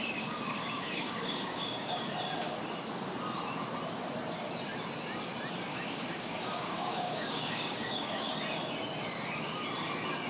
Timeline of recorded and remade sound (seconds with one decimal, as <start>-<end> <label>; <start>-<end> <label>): 0.0-2.0 remade; 2.0-5.7 recorded; 5.7-8.3 remade; 8.3-10.3 recorded